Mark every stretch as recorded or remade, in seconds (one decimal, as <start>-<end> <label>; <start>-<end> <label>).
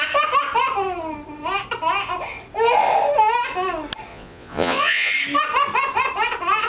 0.0-4.1 recorded; 4.1-5.1 remade; 5.1-6.7 recorded